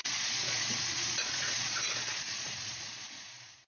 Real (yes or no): no